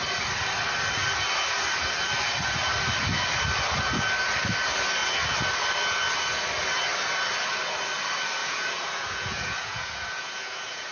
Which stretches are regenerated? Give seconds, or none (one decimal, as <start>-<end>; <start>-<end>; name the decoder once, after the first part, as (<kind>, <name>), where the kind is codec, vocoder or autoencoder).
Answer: 8.4-10.9 (vocoder, Vocos)